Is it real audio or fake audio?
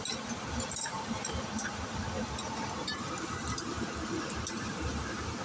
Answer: fake